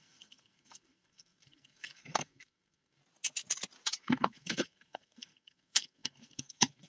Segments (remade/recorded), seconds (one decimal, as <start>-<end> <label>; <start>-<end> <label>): 0.0-3.0 remade; 3.0-4.0 recorded; 4.0-6.9 remade